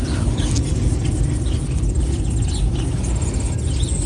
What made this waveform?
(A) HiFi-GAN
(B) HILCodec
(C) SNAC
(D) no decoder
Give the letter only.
D